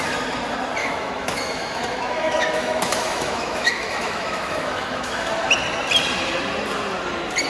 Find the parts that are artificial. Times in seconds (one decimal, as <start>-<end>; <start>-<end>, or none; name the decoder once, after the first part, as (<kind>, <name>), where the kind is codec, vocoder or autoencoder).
0.8-5.3 (autoencoder, DAC-VAE)